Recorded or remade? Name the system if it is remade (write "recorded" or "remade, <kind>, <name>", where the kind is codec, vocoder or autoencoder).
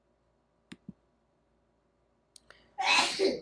recorded